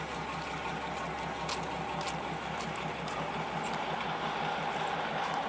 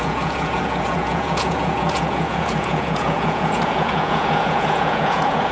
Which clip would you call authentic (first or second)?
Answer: first